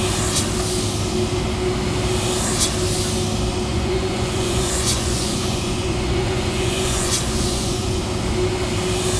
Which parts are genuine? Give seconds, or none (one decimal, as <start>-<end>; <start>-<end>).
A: 0.0-3.7; 8.0-9.2